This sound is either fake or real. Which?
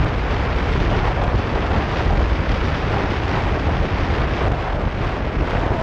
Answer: real